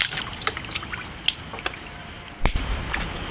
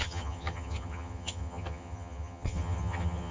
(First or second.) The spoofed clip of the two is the second